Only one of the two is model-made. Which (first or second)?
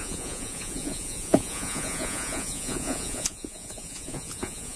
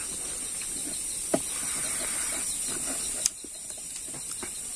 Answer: first